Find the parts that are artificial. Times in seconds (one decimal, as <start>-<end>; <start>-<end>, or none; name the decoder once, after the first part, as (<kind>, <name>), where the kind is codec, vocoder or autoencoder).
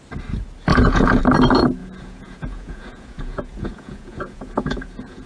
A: 0.7-1.2 (vocoder, Vocos); 1.8-5.3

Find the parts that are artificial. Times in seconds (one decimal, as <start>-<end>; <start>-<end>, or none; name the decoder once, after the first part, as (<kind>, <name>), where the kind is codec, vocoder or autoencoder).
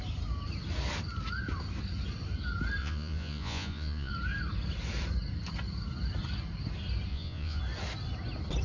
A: 2.8-4.1 (vocoder, Vocos); 7.1-7.6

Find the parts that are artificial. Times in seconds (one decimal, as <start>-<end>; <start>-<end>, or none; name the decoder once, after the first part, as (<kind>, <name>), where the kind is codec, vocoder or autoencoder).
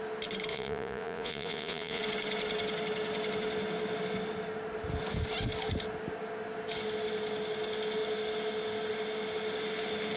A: 0.5-2.0 (vocoder, Vocos)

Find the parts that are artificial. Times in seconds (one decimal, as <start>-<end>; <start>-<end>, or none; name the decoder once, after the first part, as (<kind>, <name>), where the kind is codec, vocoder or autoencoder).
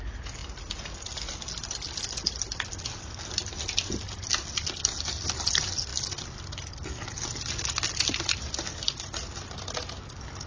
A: none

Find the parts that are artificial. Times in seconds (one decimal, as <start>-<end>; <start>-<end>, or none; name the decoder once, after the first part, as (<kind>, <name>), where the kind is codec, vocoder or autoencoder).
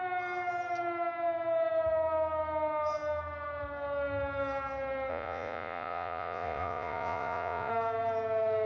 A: 5.1-7.7 (vocoder, Vocos)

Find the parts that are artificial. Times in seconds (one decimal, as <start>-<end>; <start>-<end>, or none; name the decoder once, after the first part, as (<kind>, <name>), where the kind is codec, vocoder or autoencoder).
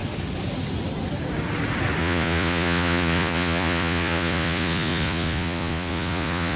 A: 2.0-6.6 (vocoder, Vocos)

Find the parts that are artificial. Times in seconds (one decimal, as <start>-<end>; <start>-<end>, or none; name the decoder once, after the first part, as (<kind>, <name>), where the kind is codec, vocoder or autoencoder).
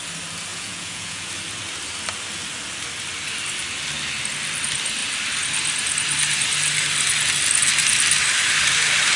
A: 0.5-1.3 (vocoder, Vocos)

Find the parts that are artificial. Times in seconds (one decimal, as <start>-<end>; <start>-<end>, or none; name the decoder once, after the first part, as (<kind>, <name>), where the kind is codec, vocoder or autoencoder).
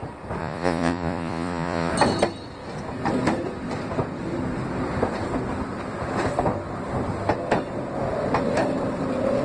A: 0.4-1.9 (vocoder, Vocos)